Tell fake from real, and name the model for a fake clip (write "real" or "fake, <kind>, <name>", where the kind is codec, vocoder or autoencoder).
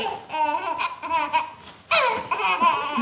real